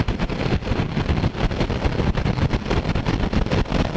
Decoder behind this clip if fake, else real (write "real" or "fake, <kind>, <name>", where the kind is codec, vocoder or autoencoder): real